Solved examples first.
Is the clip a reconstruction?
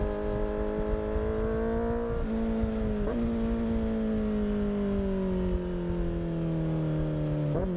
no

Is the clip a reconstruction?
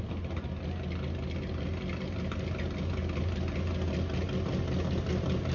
no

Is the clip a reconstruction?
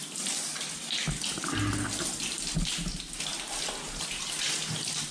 no